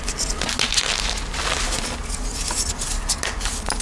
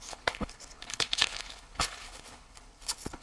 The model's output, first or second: second